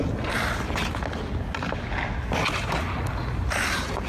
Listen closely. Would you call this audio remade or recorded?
recorded